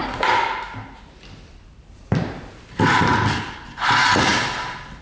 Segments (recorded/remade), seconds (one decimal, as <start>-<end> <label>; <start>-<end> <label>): 0.0-3.0 remade; 3.0-4.3 recorded; 4.3-5.0 remade